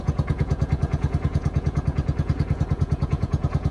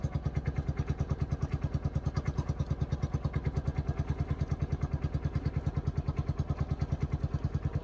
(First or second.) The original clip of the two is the second